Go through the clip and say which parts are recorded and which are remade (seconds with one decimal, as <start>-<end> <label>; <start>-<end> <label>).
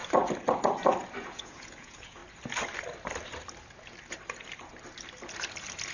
0.0-1.2 recorded; 1.2-2.2 remade; 2.2-5.9 recorded